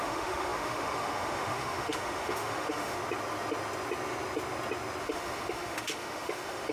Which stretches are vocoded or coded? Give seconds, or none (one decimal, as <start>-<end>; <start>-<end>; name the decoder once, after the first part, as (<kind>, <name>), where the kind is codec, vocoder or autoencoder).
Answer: 0.0-3.0 (autoencoder, DAC-VAE); 5.0-6.7